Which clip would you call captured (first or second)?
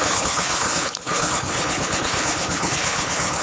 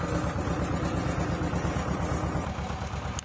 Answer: second